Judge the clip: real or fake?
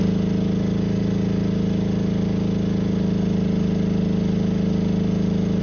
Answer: real